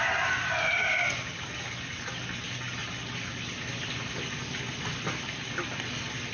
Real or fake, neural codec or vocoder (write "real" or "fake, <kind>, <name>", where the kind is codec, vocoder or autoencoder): real